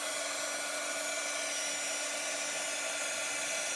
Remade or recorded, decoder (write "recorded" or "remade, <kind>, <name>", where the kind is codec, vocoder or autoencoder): recorded